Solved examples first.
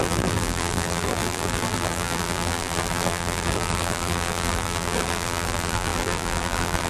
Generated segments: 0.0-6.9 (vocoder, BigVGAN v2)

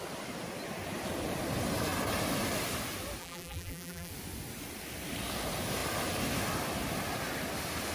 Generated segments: 3.2-4.1 (vocoder, BigVGAN v2)

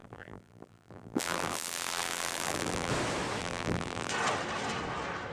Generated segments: 0.0-2.9 (vocoder, BigVGAN v2); 3.4-4.1

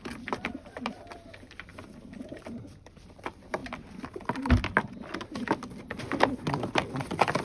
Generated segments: 0.0-1.7 (vocoder, BigVGAN v2); 2.2-3.6; 6.0-7.4

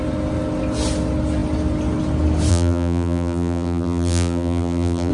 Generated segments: 2.5-5.1 (vocoder, BigVGAN v2)

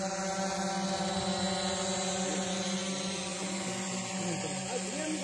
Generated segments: none

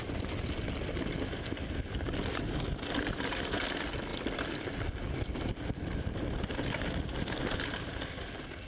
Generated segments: 4.1-7.4 (vocoder, BigVGAN v2)